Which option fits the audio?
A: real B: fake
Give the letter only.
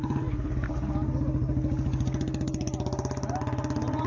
A